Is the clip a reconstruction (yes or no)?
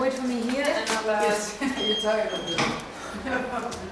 no